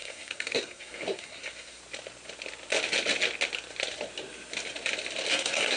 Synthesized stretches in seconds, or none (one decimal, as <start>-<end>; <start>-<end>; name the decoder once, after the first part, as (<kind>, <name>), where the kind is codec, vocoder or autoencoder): 0.0-1.8 (codec, SNAC); 5.3-5.8